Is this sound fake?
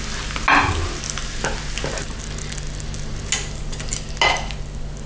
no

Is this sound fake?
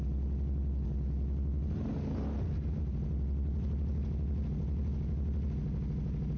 no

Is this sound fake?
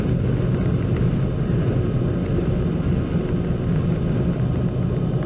no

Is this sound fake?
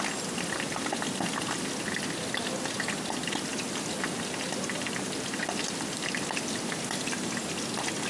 no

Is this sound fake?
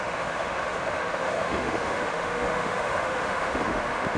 yes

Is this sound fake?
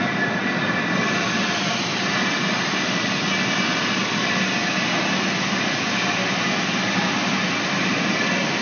no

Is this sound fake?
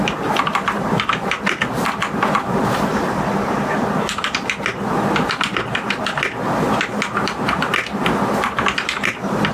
no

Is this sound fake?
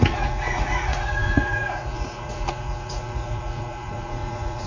yes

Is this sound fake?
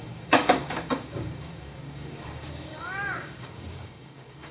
yes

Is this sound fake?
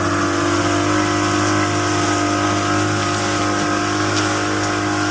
no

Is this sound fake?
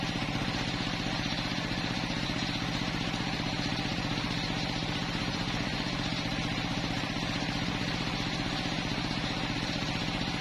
yes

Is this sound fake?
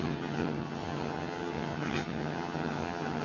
yes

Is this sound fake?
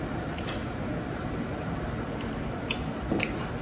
yes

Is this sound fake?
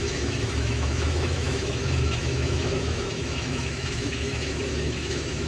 yes